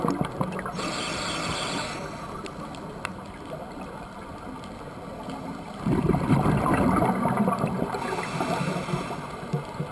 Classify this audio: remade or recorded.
recorded